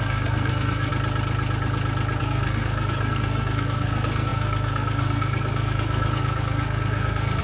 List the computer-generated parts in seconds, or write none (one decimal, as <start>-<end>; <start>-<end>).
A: 0.0-0.9; 2.2-7.4